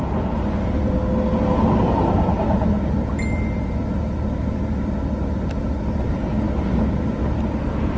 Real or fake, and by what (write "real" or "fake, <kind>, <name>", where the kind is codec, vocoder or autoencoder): real